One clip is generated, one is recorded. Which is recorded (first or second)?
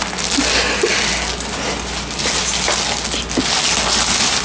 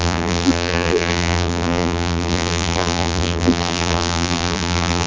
first